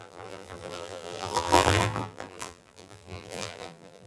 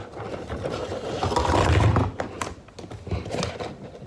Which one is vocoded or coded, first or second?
first